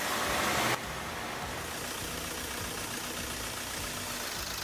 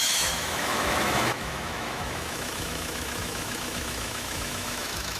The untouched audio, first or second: first